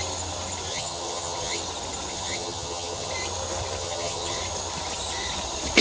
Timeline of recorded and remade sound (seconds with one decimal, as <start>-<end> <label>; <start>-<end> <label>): 0.0-0.7 recorded; 0.7-1.6 remade; 1.6-2.1 recorded; 2.1-3.1 remade; 3.1-3.8 recorded; 3.8-4.4 remade; 4.4-5.8 recorded